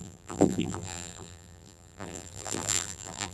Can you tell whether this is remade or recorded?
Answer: remade